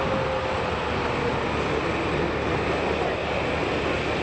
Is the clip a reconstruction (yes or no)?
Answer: no